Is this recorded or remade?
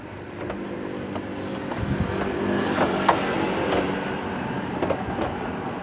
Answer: recorded